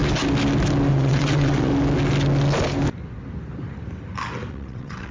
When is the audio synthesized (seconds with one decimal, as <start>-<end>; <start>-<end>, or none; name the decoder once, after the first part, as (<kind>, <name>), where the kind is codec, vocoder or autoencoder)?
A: 0.9-1.7 (vocoder, WaveNeXt); 4.5-5.1